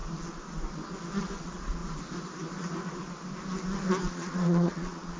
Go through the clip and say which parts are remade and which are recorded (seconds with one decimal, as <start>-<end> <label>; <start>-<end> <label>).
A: 0.0-1.4 recorded; 1.4-1.8 remade; 1.8-4.1 recorded; 4.1-5.2 remade